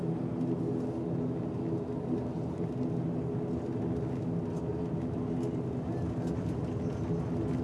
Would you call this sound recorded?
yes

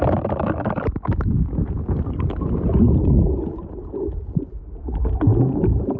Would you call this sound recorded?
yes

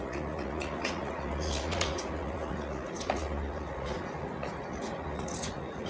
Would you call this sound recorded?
no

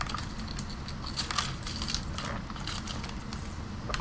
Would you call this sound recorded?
yes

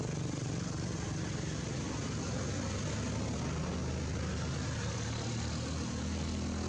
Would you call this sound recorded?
yes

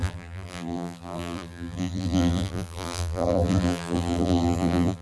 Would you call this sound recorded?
no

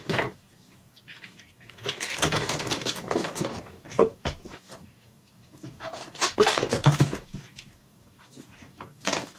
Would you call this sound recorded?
no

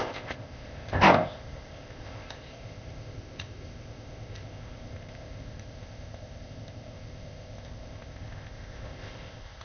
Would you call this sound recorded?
no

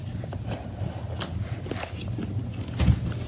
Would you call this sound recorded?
yes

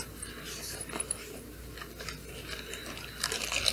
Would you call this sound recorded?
yes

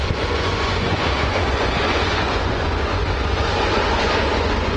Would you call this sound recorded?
no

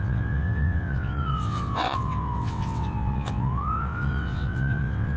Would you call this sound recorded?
no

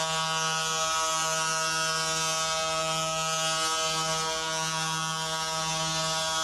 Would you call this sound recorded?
yes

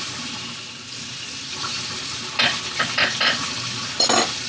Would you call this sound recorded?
yes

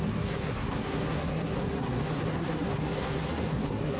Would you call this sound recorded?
no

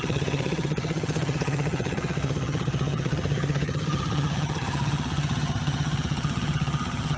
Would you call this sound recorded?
no